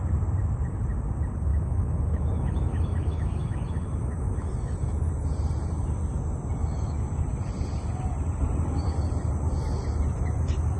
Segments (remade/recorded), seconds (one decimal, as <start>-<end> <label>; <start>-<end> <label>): 0.0-1.5 recorded; 1.5-5.1 remade; 5.1-6.6 recorded; 6.6-7.2 remade; 7.2-10.8 recorded